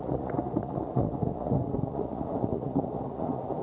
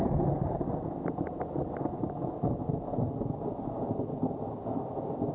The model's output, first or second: first